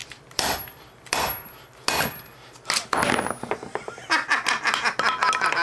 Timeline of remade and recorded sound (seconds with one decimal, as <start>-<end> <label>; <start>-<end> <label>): 0.0-1.6 remade; 1.6-5.6 recorded